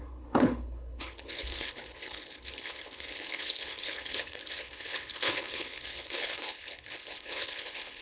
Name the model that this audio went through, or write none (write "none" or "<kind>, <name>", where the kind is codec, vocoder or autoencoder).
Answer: codec, HILCodec